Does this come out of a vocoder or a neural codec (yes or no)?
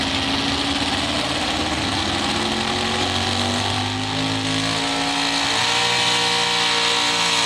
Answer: no